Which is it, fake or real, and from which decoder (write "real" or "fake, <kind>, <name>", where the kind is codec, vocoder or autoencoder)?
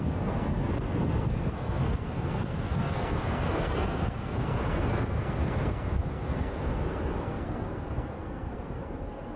fake, codec, SNAC